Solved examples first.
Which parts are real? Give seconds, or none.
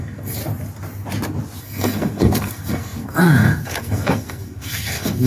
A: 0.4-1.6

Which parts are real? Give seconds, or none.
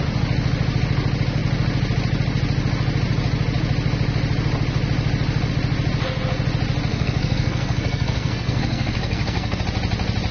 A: 0.0-6.9; 9.6-10.3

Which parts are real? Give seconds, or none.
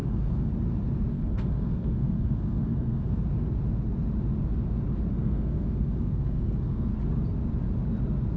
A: 0.5-1.1; 3.2-5.1; 6.9-8.4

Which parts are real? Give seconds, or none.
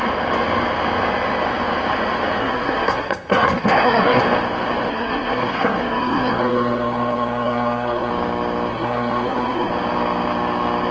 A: 0.0-2.4; 4.2-4.9; 8.1-8.7; 9.7-10.9